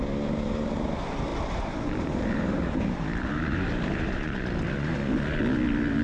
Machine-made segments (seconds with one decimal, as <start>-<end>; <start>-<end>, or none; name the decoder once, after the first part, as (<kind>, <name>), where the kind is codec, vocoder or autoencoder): 1.3-4.4 (vocoder, BigVGAN v2)